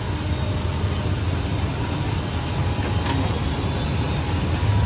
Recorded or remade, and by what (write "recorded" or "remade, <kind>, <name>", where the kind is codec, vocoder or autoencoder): recorded